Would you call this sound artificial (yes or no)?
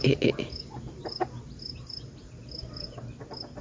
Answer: no